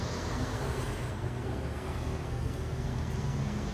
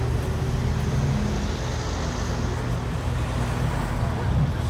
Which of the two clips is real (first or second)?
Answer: second